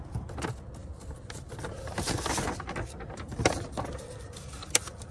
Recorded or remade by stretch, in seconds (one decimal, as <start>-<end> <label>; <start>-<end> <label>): 0.0-5.1 recorded